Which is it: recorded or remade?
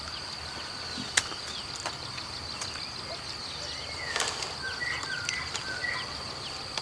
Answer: recorded